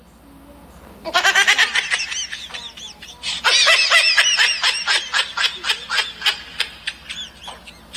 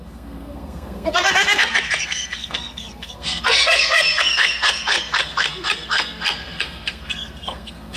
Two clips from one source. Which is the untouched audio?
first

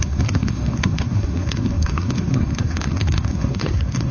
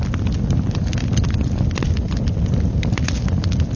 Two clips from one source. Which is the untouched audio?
second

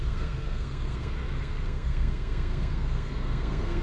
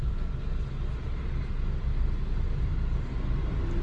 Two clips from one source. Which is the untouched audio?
second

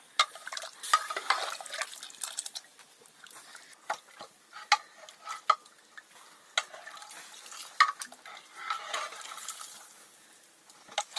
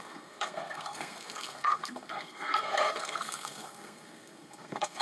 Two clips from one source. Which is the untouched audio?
first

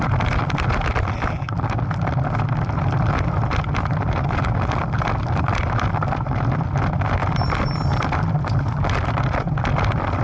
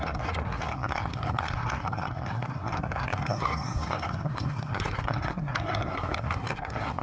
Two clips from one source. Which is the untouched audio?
first